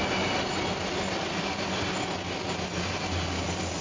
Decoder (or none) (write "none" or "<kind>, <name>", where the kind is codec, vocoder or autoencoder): none